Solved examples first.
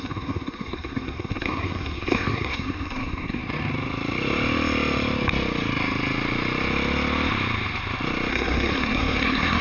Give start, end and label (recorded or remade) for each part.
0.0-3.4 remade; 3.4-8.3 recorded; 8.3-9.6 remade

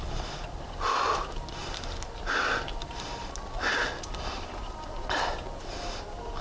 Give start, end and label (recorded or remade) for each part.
0.0-6.4 recorded

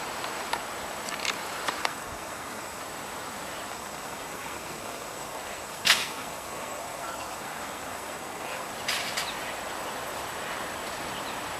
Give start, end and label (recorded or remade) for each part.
0.0-1.8 recorded; 1.8-2.8 remade; 2.8-3.7 recorded; 3.7-8.7 remade; 8.7-11.6 recorded